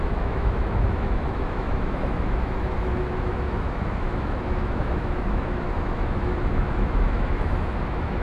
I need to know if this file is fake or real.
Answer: fake